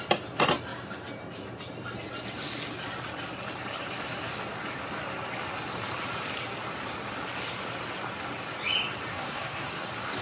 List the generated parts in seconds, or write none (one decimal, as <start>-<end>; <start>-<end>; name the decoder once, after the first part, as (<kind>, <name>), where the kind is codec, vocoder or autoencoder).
9.1-9.7 (codec, SNAC)